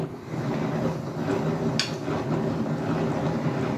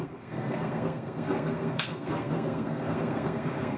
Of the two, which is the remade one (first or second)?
second